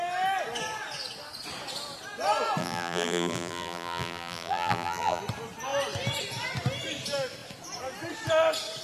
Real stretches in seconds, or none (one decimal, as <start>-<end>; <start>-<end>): 0.0-2.6; 5.2-8.8